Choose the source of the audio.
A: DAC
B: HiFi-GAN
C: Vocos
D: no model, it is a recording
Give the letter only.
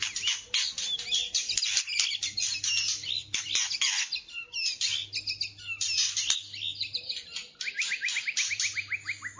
D